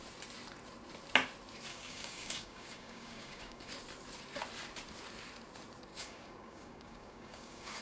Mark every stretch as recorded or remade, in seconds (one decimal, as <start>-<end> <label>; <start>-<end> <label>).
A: 0.0-1.7 recorded; 1.7-3.7 remade; 3.7-5.9 recorded; 5.9-7.8 remade